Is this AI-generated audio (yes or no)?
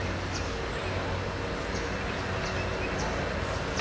no